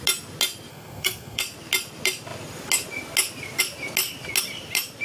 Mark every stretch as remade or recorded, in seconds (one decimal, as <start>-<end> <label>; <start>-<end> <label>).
0.0-0.7 recorded; 0.7-1.4 remade; 1.4-5.0 recorded